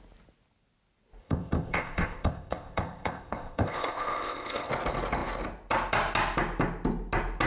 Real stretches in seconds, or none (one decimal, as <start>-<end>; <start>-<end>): 0.0-1.2; 4.7-7.5